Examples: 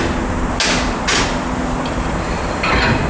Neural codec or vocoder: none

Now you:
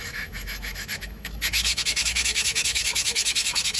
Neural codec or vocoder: autoencoder, DAC-VAE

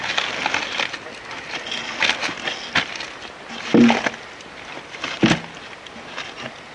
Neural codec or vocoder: none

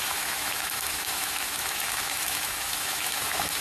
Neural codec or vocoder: autoencoder, DAC-VAE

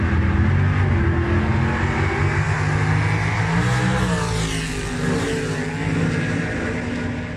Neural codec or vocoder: none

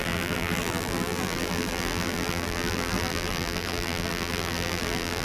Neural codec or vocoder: vocoder, BigVGAN v2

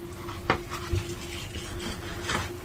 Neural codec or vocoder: none